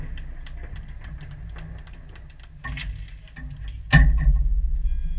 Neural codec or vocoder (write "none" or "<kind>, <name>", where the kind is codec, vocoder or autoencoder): none